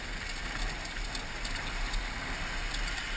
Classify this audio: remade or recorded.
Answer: recorded